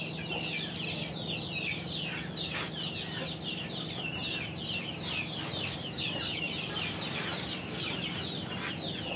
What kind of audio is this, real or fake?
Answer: real